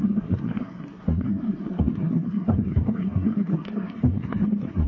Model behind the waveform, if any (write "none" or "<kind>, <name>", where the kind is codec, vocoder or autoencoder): codec, SNAC